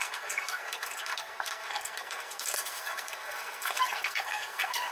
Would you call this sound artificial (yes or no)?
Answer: yes